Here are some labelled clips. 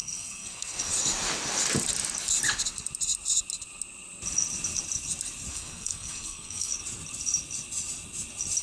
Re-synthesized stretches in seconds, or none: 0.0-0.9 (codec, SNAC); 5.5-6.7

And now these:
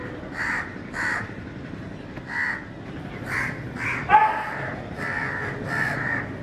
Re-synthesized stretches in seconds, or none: none

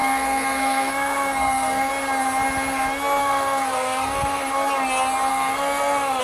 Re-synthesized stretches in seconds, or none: 0.0-1.9 (codec, SNAC); 3.2-4.4; 5.3-6.2

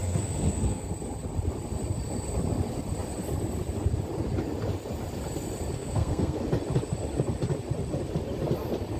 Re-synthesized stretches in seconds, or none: 0.0-0.9 (codec, SNAC); 5.8-6.4

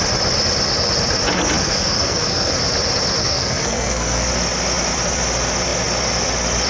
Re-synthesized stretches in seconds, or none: 1.6-2.5 (codec, SNAC); 3.2-4.3

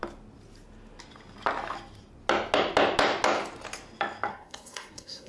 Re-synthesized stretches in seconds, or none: 4.3-5.3 (codec, SNAC)

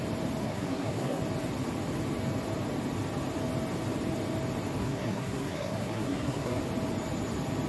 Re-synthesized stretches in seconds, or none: 0.4-1.2 (codec, SNAC); 4.8-6.6